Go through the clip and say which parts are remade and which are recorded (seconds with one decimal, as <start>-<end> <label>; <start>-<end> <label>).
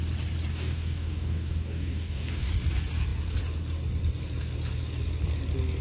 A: 0.0-0.5 recorded; 0.5-2.5 remade; 2.5-5.8 recorded